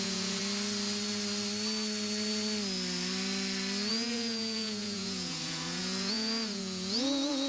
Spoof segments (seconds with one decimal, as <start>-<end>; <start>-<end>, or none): 0.0-0.4; 3.9-7.5